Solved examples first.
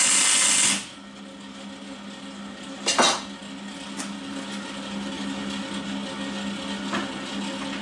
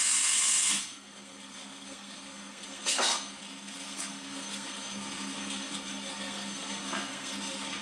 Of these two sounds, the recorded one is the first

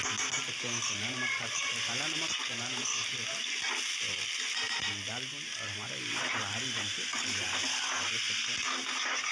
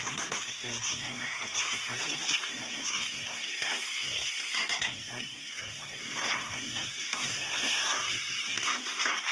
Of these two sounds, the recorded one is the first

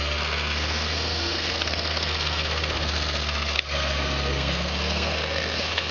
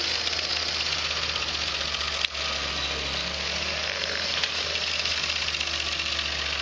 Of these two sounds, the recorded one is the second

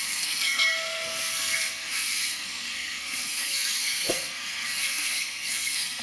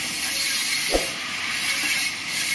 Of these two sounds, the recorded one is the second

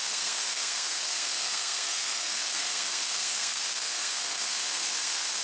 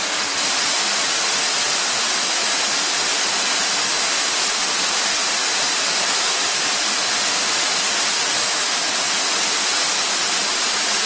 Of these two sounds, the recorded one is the second